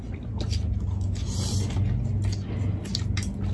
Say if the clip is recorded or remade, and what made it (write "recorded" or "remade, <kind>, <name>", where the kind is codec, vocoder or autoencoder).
recorded